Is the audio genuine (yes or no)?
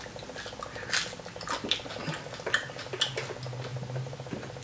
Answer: yes